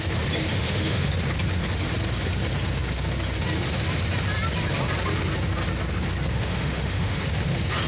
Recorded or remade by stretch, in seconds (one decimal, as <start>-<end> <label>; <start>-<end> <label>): 0.0-0.5 recorded; 0.5-1.1 remade; 1.1-6.3 recorded; 6.3-7.2 remade; 7.2-7.9 recorded